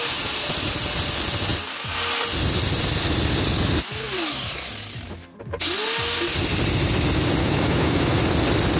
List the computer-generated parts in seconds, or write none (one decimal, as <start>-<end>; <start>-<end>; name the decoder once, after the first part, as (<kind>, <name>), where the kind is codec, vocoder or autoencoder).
7.4-8.2 (autoencoder, DAC-VAE)